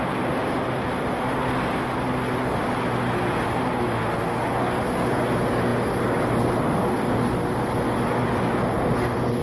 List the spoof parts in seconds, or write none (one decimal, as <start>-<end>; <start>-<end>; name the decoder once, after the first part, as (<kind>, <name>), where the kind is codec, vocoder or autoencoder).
none